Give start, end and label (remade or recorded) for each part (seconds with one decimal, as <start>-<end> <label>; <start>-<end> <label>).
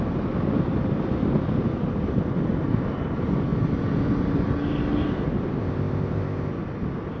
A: 0.0-5.6 recorded; 5.6-6.5 remade; 6.5-7.2 recorded